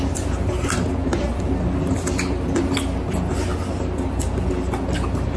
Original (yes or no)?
yes